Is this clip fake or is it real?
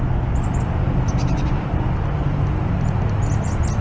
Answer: real